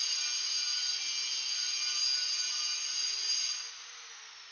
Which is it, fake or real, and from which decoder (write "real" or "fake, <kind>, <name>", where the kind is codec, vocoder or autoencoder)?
real